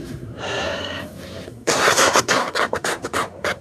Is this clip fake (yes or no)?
yes